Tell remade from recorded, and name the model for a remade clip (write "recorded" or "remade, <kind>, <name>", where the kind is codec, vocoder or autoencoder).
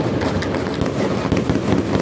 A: recorded